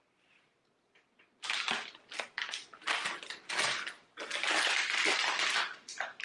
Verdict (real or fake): real